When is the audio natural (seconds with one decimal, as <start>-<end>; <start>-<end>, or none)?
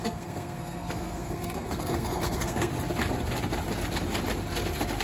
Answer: 2.7-5.0